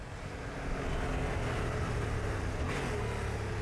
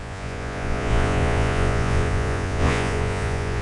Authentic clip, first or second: first